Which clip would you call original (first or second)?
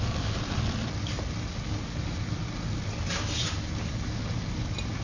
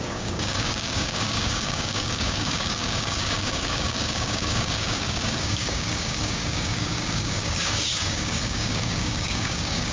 first